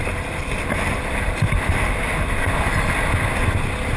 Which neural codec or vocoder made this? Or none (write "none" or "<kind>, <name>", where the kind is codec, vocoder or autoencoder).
none